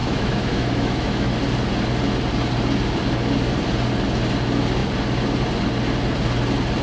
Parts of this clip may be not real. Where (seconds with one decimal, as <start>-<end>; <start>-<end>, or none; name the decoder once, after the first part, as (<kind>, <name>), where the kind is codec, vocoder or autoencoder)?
0.0-1.3 (autoencoder, DAC-VAE)